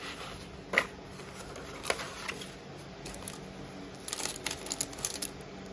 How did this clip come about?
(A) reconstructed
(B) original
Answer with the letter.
B